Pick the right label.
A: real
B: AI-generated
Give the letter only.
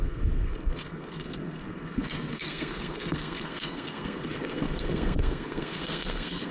B